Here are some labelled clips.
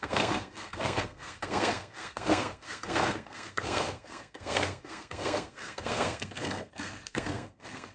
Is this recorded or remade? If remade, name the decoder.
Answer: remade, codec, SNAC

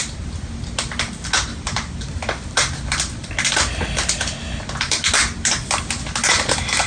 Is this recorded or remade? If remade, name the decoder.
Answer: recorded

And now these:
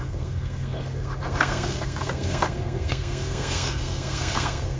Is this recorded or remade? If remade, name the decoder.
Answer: remade, codec, SNAC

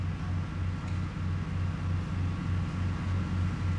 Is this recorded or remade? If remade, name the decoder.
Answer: recorded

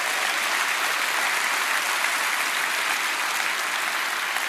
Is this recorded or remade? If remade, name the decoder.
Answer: recorded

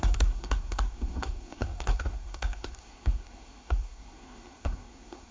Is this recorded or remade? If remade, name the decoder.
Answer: remade, codec, SNAC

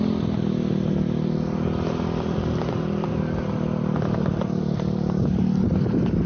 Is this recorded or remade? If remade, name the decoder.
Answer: recorded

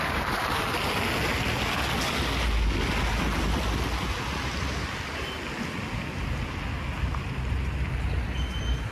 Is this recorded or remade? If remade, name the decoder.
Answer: recorded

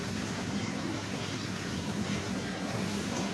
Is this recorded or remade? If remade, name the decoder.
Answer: remade, codec, SNAC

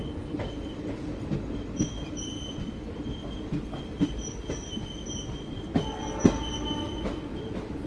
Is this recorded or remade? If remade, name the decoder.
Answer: recorded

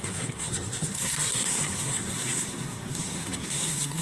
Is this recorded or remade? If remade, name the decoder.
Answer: remade, codec, SNAC